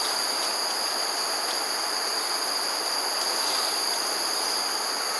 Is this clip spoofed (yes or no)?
no